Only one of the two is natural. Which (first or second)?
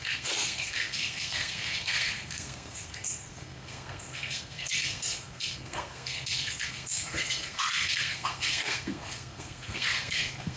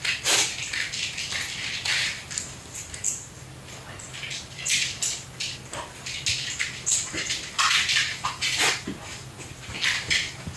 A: second